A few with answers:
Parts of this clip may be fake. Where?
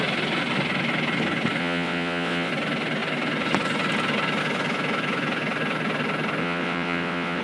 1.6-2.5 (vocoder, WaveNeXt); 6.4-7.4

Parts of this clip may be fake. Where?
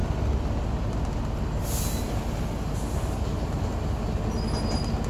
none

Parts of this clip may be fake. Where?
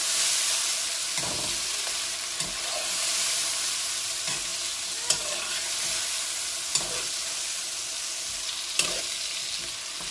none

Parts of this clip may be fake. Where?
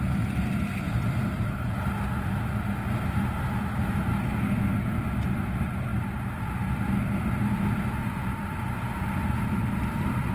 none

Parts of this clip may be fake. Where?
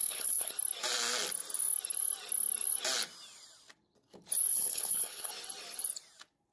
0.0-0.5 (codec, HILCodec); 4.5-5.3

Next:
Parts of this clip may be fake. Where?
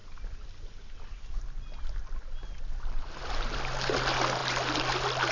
none